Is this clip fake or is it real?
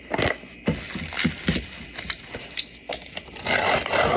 real